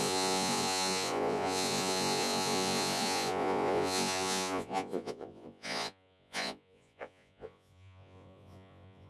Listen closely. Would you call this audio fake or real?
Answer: fake